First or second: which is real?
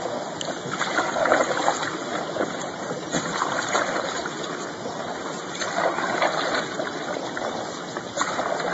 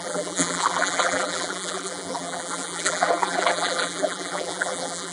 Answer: first